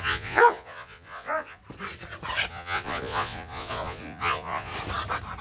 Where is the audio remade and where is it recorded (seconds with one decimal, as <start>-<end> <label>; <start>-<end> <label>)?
0.0-1.6 remade; 1.6-2.5 recorded; 2.5-4.7 remade; 4.7-5.4 recorded